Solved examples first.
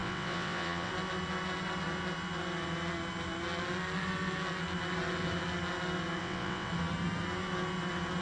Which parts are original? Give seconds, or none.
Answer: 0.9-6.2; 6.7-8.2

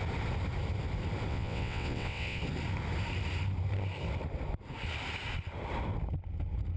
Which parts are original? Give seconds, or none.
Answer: 0.0-1.3; 2.4-6.8

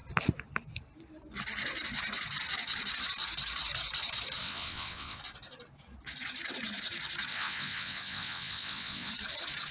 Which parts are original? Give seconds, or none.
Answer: 0.0-4.4; 5.2-7.3; 9.1-9.7

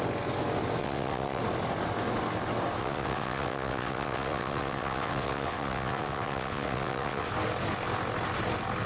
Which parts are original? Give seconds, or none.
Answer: 0.0-0.8; 1.4-2.8; 7.3-8.9

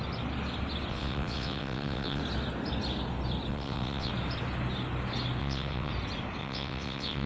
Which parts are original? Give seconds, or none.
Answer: 0.0-0.9; 2.2-3.5; 4.1-5.4; 5.9-6.4

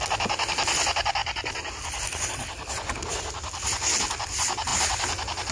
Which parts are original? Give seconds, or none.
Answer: 0.0-5.5

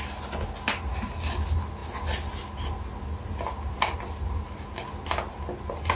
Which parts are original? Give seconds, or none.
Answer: 0.0-5.9